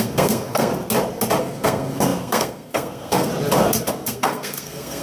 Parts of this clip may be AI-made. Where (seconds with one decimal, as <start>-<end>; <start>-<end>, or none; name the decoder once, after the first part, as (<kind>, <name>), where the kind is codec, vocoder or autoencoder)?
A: 0.0-0.7 (codec, SNAC); 1.4-3.3; 3.9-5.0